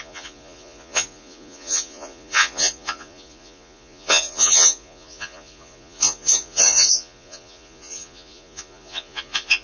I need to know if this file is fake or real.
fake